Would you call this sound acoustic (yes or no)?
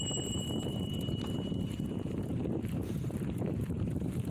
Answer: no